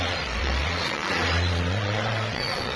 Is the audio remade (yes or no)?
yes